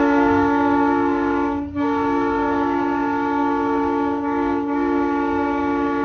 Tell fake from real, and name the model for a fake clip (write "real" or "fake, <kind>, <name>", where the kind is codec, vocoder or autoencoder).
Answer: fake, codec, DAC